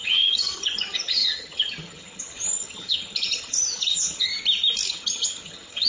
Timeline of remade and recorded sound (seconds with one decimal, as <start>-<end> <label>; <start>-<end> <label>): 0.0-4.3 remade; 4.3-4.9 recorded; 4.9-5.9 remade